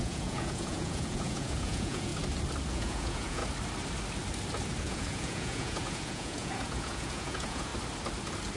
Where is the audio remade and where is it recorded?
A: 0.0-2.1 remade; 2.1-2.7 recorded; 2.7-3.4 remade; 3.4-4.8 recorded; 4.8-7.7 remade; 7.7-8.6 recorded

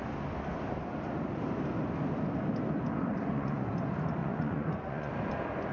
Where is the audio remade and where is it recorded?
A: 0.0-3.1 recorded; 3.1-3.7 remade; 3.7-4.2 recorded; 4.2-5.1 remade; 5.1-5.7 recorded

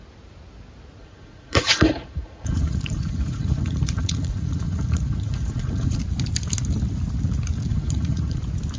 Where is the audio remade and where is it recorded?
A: 0.0-1.0 recorded; 1.0-6.0 remade; 6.0-7.7 recorded; 7.7-8.4 remade; 8.4-8.8 recorded

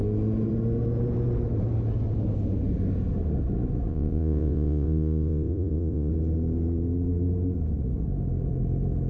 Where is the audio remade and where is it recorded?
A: 0.0-3.9 recorded; 3.9-6.1 remade; 6.1-9.1 recorded

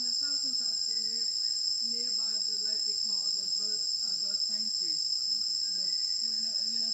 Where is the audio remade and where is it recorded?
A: 0.0-6.9 recorded

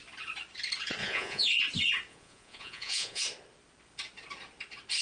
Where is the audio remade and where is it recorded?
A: 0.0-1.0 recorded; 1.0-1.5 remade; 1.5-2.1 recorded; 2.1-3.2 remade; 3.2-5.0 recorded